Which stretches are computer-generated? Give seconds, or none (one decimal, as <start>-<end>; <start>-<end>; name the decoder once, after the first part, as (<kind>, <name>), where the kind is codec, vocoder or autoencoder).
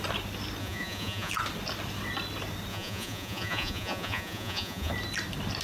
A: 0.6-1.3 (vocoder, Vocos); 2.7-4.9